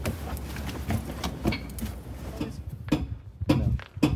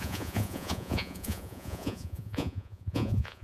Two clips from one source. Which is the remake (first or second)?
second